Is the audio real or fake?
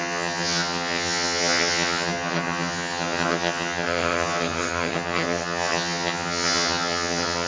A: fake